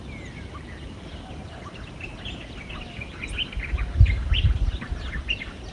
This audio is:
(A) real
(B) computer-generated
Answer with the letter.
A